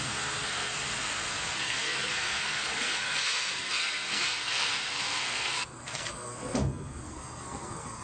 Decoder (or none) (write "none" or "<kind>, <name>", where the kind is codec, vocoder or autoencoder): codec, SNAC